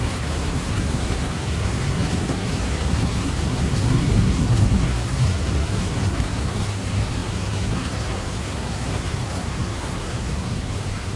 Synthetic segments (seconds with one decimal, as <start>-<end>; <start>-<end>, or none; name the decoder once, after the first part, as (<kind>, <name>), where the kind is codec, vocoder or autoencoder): 0.0-11.2 (codec, SNAC)